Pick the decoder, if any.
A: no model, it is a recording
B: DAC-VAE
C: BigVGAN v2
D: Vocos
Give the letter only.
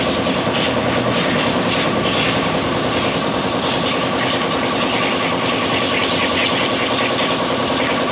A